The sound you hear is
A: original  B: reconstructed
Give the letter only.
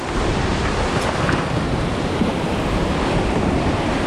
A